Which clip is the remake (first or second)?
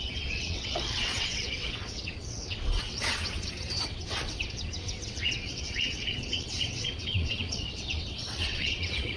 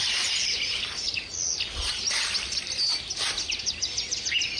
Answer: first